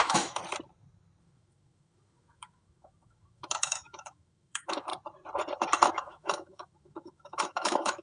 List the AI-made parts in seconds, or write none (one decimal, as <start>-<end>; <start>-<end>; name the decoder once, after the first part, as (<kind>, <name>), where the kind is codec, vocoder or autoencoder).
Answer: 0.0-0.4 (autoencoder, DAC-VAE); 1.2-4.9; 5.9-8.0